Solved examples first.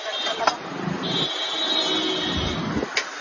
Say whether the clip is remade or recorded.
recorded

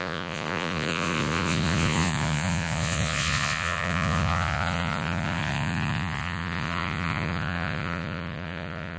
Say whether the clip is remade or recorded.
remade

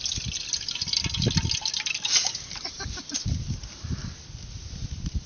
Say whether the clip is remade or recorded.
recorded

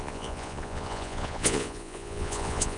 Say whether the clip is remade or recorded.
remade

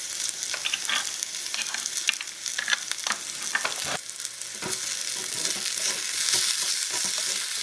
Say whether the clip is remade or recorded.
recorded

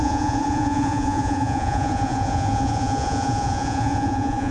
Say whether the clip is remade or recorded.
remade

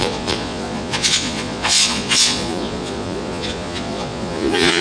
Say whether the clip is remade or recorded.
remade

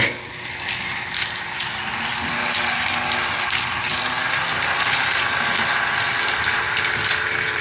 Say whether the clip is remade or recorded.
recorded